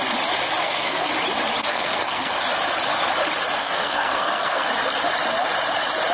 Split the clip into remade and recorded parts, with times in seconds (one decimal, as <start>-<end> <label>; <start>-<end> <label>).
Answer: 0.0-0.6 recorded; 0.6-1.1 remade; 1.1-1.7 recorded; 1.7-2.3 remade; 2.3-3.6 recorded; 3.6-4.7 remade; 4.7-6.1 recorded